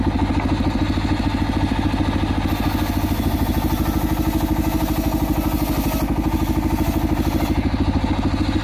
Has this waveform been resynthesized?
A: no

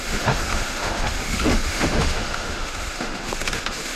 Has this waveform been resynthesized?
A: yes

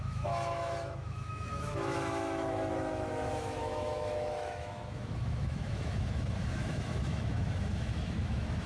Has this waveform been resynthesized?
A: yes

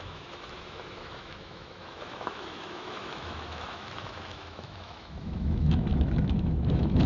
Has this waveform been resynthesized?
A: yes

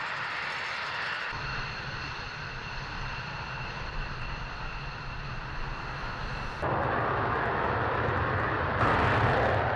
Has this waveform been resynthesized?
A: no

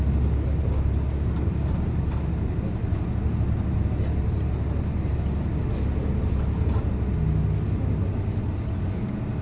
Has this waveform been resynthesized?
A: no